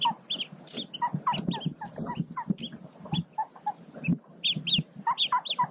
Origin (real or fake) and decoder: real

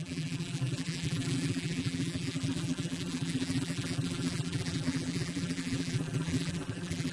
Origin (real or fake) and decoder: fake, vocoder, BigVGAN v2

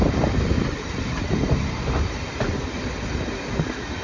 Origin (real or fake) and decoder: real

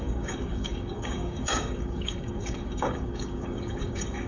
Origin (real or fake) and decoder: fake, codec, DAC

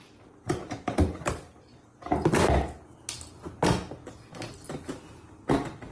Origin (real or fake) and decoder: real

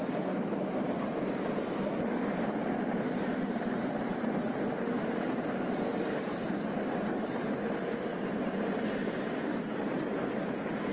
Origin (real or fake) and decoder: real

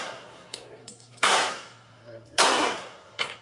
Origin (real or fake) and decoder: fake, codec, SNAC